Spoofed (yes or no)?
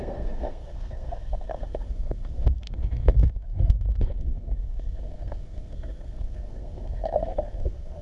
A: yes